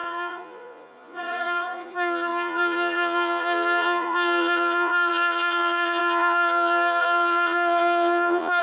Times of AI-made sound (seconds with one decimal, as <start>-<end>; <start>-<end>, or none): 0.0-8.6